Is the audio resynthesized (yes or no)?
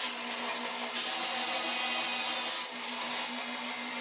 no